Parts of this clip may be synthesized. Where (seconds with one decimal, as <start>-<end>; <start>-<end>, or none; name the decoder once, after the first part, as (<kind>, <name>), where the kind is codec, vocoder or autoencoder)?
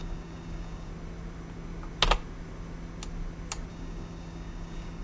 0.0-0.9 (codec, DAC); 3.7-5.0